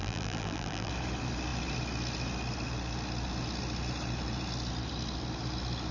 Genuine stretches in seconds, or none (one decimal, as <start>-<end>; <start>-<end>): 0.9-5.9

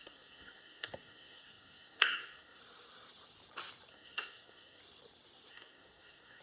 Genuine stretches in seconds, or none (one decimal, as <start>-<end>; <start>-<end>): 2.6-3.9; 4.8-5.5

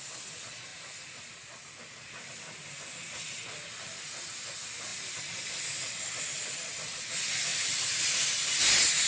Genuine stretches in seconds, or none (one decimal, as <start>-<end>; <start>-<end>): 0.0-0.7; 1.7-7.5; 8.0-9.1

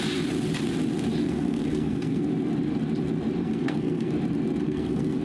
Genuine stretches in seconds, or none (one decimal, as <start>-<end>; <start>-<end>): 0.0-1.2; 2.3-3.4; 4.1-4.6

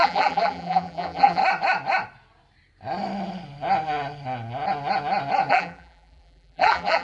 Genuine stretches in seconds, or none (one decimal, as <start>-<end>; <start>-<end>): 1.4-5.5

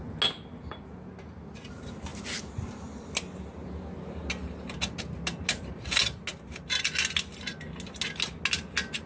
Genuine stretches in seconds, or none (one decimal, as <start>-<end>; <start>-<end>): 0.0-9.1

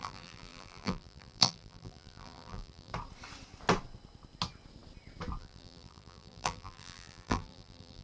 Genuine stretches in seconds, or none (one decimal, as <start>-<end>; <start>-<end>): 2.9-5.4